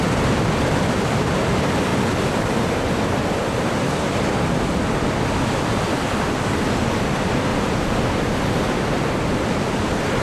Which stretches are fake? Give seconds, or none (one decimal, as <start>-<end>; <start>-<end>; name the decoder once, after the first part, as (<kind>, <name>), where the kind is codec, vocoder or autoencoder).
0.0-7.5 (vocoder, BigVGAN v2); 8.1-10.2